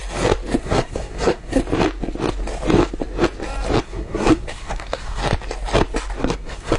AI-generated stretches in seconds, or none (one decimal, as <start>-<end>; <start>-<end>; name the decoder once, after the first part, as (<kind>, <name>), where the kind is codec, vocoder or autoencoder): 0.6-1.6 (codec, SNAC); 3.8-5.2; 6.2-6.8